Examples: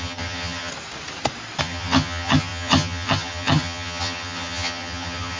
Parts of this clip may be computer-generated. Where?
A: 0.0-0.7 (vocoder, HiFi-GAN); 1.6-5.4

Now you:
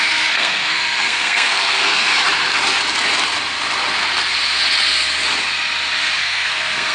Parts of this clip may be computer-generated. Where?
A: 0.0-2.1 (codec, SNAC); 6.2-6.9